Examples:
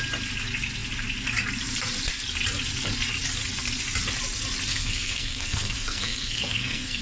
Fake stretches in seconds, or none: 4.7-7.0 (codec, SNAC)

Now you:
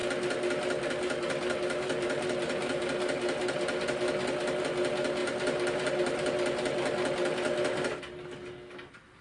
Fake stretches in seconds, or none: none